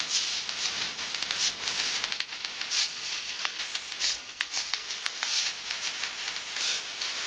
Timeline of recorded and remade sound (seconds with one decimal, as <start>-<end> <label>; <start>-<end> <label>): 0.0-2.8 recorded; 2.8-3.6 remade; 3.6-4.0 recorded; 4.0-5.4 remade; 5.4-7.3 recorded